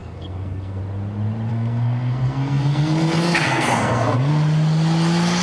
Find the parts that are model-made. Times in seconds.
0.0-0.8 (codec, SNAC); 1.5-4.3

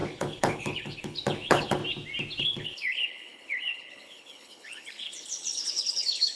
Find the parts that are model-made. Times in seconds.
0.0-1.8 (codec, HILCodec); 2.4-6.4

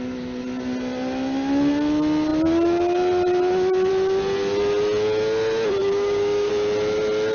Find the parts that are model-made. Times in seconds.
5.8-6.5 (codec, DAC)

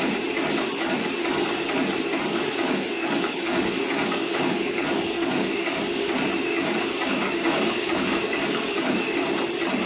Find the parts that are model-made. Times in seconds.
2.3-5.8 (codec, DAC); 6.5-9.0

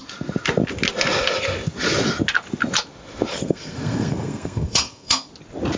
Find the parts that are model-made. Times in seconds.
3.3-5.3 (codec, SNAC)